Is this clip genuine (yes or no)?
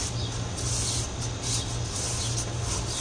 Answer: yes